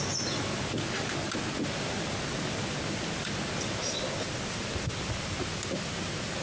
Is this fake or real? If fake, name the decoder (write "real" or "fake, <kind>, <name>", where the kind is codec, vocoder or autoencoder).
real